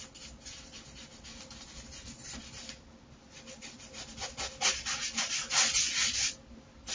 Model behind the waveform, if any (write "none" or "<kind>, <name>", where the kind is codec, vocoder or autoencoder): none